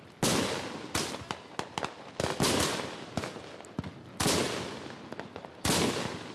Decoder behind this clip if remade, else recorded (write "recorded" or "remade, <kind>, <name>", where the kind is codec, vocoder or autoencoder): recorded